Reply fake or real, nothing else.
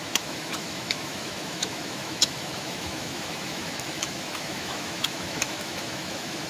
fake